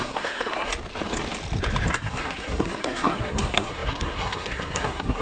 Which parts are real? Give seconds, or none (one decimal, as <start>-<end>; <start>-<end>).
0.7-1.9